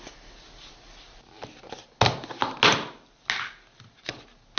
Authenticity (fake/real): real